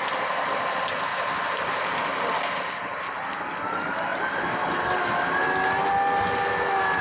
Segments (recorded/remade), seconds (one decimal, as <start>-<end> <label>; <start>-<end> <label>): 0.0-7.0 recorded